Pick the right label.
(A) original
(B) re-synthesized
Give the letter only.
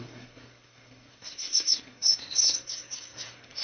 B